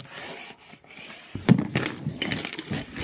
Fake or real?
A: real